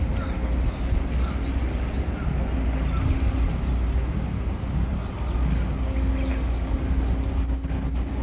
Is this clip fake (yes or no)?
no